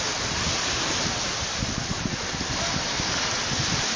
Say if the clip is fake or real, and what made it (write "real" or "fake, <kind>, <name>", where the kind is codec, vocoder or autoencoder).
real